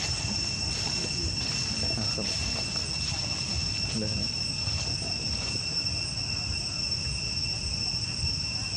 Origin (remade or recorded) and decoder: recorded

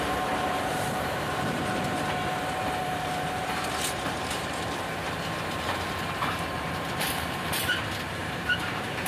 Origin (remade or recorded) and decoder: remade, vocoder, BigVGAN v2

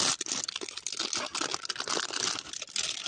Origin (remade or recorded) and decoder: recorded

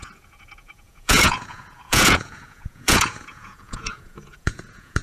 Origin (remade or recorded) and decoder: remade, vocoder, Vocos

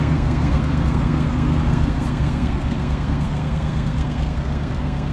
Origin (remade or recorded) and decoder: remade, codec, SNAC